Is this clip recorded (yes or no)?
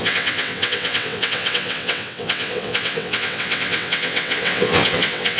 no